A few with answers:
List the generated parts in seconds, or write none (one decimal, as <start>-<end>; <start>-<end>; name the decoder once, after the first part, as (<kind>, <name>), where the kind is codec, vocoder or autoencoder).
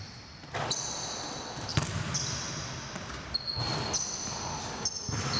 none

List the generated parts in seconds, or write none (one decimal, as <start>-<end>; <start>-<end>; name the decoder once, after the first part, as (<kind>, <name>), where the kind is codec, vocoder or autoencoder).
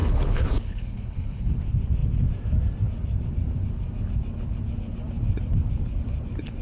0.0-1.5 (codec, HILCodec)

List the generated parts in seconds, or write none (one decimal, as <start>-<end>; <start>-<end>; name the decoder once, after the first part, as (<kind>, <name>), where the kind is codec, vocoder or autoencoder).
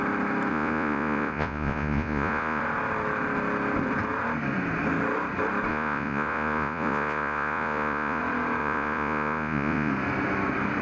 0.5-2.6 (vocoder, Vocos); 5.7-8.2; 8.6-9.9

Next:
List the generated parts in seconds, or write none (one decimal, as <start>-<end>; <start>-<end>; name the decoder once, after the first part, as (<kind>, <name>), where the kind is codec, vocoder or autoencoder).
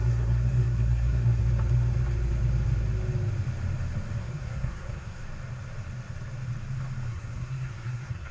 0.0-1.4 (codec, SNAC); 4.2-5.2; 7.1-8.3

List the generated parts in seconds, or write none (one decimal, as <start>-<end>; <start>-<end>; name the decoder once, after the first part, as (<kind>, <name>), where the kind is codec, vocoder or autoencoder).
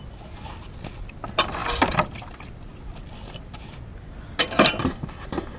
none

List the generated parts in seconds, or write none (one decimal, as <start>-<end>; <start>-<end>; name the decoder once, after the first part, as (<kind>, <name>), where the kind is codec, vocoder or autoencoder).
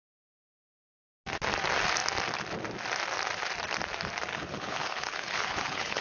4.3-6.0 (codec, HILCodec)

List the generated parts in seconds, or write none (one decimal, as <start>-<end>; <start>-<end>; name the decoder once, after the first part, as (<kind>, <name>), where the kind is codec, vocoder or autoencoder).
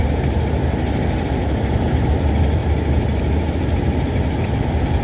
none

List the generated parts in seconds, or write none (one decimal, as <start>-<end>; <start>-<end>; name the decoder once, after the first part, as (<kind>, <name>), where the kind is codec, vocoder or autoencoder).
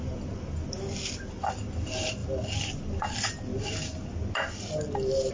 none